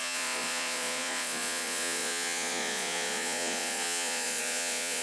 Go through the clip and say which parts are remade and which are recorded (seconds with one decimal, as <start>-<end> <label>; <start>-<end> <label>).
0.0-5.0 remade